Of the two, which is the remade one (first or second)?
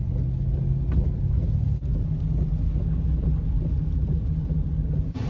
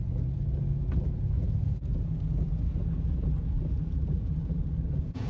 second